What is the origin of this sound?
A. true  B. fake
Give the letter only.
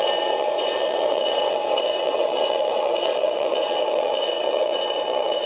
B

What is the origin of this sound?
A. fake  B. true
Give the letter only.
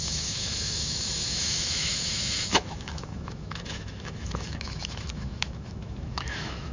A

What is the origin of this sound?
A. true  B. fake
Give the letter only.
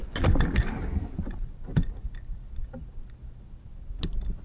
A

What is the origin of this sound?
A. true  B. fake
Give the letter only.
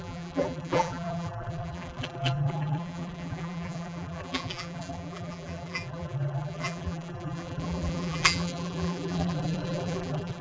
B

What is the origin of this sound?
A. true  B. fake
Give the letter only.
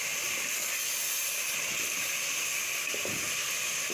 A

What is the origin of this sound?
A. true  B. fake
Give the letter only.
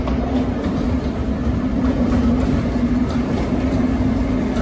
A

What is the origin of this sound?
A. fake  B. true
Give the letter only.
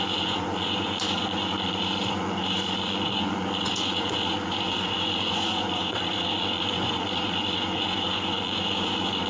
A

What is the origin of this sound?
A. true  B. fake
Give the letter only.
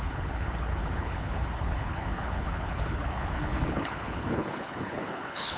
B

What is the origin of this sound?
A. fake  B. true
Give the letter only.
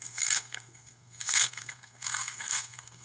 A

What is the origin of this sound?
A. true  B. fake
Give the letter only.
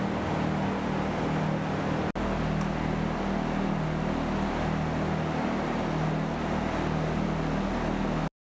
A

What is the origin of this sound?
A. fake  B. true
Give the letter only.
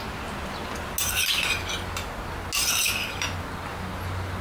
B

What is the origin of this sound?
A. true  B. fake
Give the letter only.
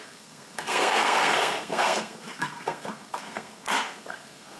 B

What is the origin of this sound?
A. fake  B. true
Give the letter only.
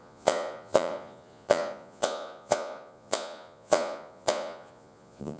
A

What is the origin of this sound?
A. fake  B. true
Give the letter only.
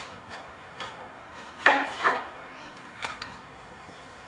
A